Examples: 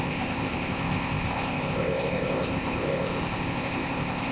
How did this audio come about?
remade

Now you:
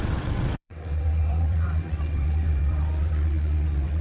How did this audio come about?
remade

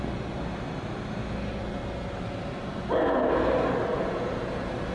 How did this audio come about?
recorded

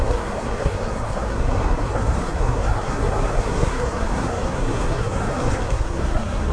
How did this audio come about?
remade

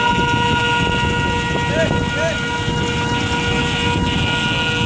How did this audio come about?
recorded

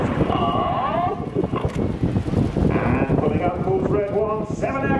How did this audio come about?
recorded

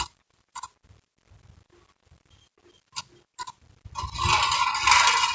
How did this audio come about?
recorded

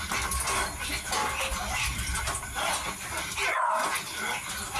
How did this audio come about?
recorded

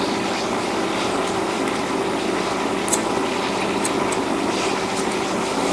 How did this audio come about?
recorded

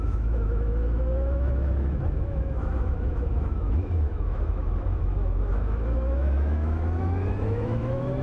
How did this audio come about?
remade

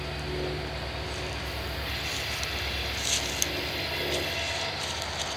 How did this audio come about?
recorded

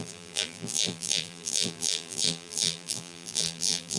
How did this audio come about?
remade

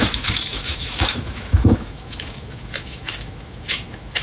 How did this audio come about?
remade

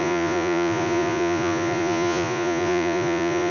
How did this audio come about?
remade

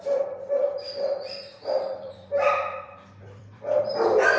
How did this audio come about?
remade